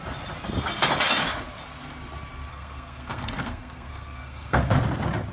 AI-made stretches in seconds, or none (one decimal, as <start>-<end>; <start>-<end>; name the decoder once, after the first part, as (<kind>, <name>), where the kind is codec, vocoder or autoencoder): 2.5-4.7 (codec, SNAC)